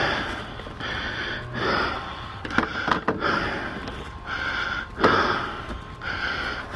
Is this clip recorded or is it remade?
recorded